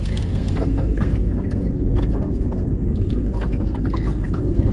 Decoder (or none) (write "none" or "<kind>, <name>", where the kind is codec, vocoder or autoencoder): codec, SNAC